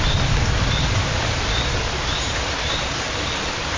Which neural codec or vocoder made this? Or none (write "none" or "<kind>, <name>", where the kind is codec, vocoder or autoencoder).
none